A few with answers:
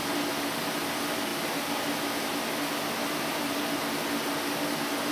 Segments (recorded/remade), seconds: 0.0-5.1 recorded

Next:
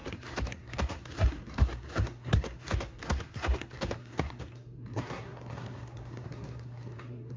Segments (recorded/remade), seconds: 0.0-7.4 remade

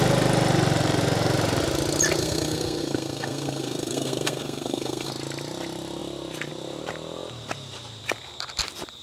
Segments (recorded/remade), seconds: 0.0-2.2 recorded; 2.2-5.1 remade; 5.1-9.0 recorded

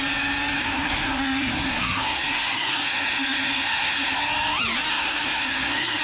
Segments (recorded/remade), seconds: 0.0-0.6 recorded; 0.6-4.2 remade; 4.2-4.9 recorded; 4.9-6.0 remade

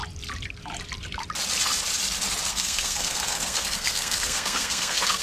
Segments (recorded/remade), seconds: 0.0-2.5 recorded; 2.5-5.2 remade

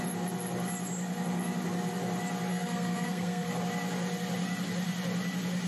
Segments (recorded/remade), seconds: 0.0-2.5 recorded; 2.5-3.6 remade; 3.6-5.7 recorded

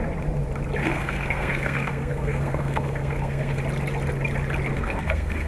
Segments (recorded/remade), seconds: 0.0-0.8 recorded; 0.8-3.6 remade; 3.6-4.7 recorded; 4.7-5.5 remade

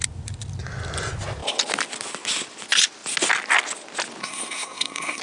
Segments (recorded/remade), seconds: 0.0-4.2 recorded; 4.2-5.2 remade